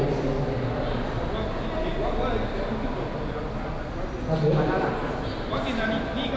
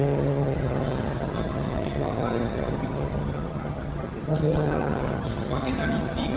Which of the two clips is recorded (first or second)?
first